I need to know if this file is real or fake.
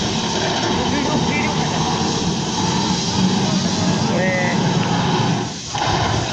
real